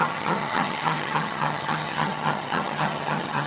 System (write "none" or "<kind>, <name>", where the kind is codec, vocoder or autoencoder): vocoder, HiFi-GAN